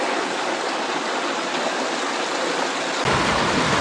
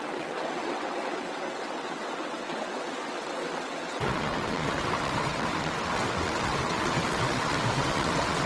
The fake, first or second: second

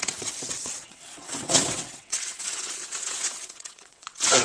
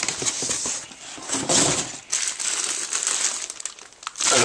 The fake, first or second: first